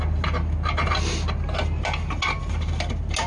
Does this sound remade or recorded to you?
recorded